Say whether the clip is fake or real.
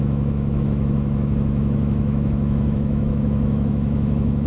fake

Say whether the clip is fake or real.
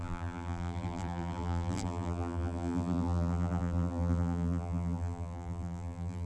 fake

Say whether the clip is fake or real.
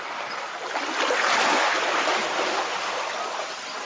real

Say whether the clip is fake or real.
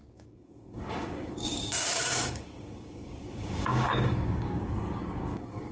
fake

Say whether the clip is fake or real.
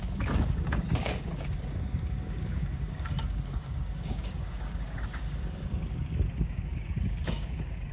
fake